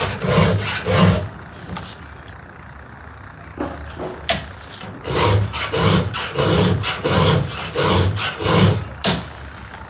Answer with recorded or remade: recorded